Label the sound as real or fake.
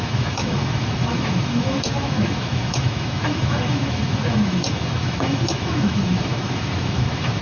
fake